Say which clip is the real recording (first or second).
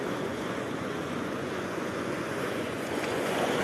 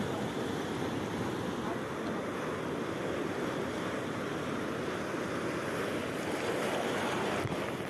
second